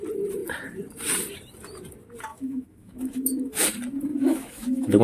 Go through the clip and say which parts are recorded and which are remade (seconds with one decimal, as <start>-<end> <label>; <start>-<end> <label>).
0.0-2.3 recorded; 2.3-3.6 remade; 3.6-4.1 recorded; 4.1-5.0 remade

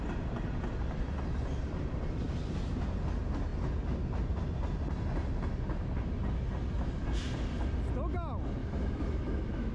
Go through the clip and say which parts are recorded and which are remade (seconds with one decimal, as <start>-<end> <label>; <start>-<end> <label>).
0.0-8.6 recorded; 8.6-9.7 remade

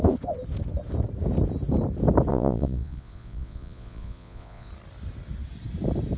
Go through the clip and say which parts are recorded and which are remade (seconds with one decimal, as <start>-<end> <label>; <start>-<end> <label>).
0.0-2.3 recorded; 2.3-4.7 remade; 4.7-6.2 recorded

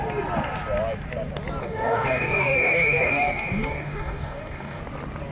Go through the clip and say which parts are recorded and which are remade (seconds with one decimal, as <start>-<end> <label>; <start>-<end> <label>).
0.0-1.6 recorded; 1.6-4.8 remade; 4.8-5.3 recorded

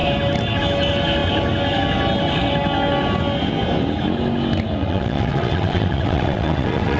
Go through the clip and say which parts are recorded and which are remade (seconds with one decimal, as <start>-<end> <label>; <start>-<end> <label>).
0.0-4.8 recorded; 4.8-7.0 remade